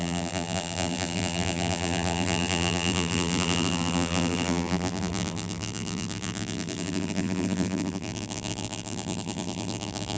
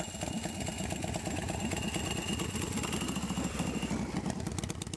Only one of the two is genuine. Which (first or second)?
second